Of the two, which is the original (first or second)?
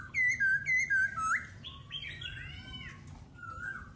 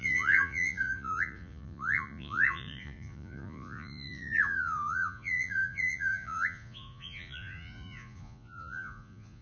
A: first